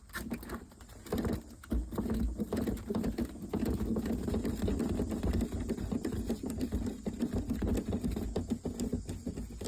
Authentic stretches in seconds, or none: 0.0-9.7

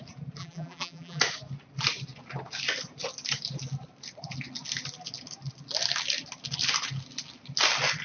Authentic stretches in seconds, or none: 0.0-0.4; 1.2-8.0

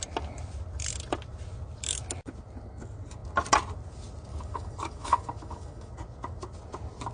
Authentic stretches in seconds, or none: 0.0-4.3; 5.9-7.1

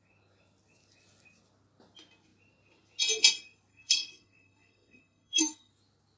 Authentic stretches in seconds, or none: 0.0-3.7; 5.7-6.2